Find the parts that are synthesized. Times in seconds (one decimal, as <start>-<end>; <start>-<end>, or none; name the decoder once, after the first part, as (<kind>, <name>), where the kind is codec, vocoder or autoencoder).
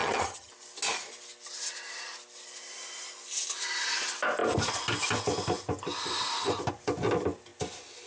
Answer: 0.0-0.5 (vocoder, HiFi-GAN)